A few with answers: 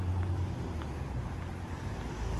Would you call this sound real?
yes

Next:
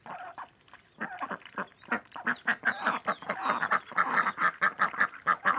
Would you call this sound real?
yes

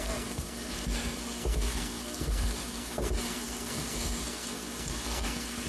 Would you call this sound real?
no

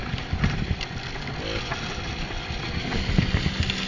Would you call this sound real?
yes